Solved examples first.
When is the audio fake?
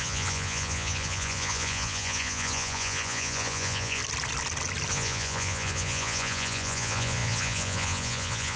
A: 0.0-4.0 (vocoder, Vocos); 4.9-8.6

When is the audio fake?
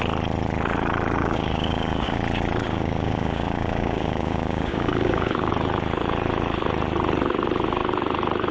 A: 1.2-2.2 (codec, DAC); 2.7-5.5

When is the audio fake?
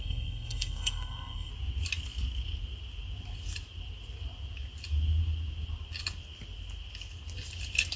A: 0.0-1.5 (codec, SNAC)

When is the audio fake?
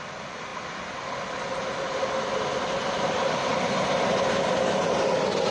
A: 3.5-4.5 (vocoder, BigVGAN v2)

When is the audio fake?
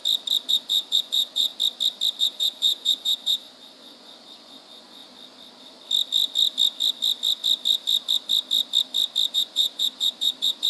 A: 0.5-1.5 (vocoder, Vocos); 2.2-5.0; 9.3-10.7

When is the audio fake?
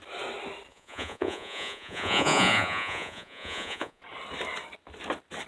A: 0.7-4.0 (vocoder, Vocos)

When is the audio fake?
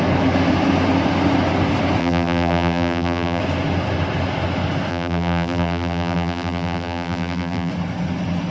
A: 2.0-3.4 (vocoder, BigVGAN v2); 4.9-7.7